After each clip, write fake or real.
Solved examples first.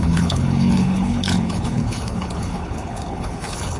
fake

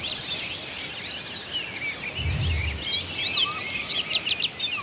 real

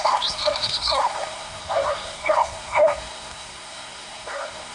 fake